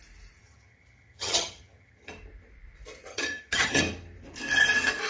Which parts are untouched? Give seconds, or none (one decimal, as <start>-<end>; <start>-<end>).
0.0-0.4; 2.1-3.1; 3.8-5.1